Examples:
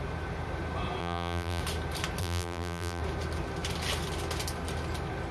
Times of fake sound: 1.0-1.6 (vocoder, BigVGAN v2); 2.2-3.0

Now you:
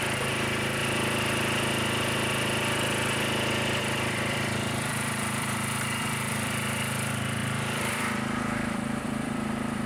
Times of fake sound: 0.0-0.8 (vocoder, BigVGAN v2); 3.8-9.9

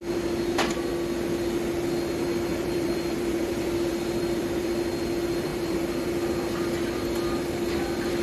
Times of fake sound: 2.5-4.7 (vocoder, BigVGAN v2); 5.5-6.0